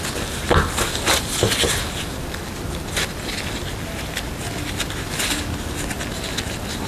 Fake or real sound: real